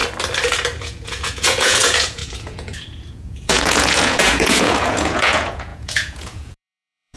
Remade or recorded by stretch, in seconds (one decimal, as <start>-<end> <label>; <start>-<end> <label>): 0.0-0.8 recorded; 0.8-7.2 remade